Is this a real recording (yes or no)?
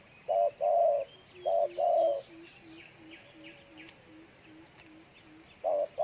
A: yes